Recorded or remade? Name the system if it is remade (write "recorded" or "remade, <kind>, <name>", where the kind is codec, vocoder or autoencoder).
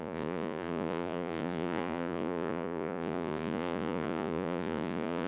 remade, vocoder, Vocos